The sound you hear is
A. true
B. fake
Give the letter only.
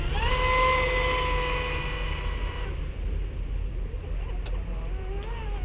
A